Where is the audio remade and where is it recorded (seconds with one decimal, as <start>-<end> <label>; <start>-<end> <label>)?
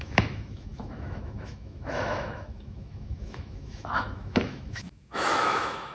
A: 0.0-5.9 remade